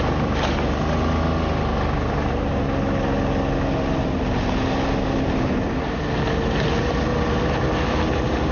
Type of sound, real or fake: real